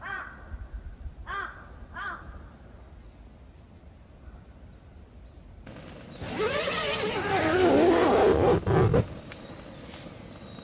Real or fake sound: real